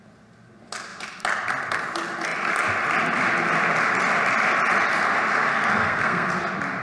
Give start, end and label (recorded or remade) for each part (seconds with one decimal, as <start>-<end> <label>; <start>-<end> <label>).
0.0-5.5 recorded; 5.5-6.3 remade; 6.3-6.8 recorded